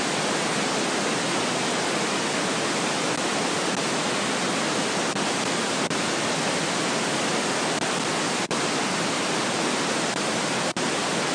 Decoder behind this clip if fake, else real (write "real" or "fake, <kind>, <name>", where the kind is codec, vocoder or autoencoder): real